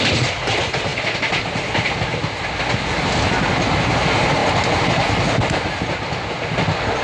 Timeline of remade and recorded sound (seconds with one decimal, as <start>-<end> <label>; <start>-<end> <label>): 0.0-7.0 recorded